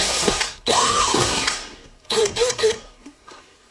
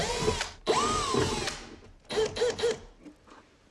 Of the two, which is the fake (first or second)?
first